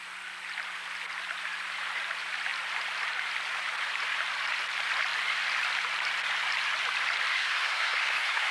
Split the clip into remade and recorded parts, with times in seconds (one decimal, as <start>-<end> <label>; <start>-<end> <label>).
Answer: 0.0-7.3 recorded; 7.3-8.5 remade